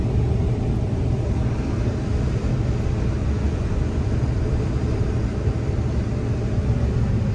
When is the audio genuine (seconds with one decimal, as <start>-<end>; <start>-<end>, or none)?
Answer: 0.0-3.2; 4.1-7.3